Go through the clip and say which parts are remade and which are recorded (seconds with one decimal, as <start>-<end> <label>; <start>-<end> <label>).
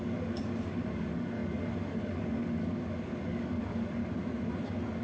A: 0.0-4.0 remade; 4.0-5.0 recorded